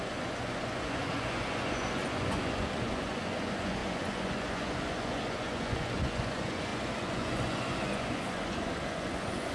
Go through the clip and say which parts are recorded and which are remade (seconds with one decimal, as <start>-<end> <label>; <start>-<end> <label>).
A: 0.0-9.5 remade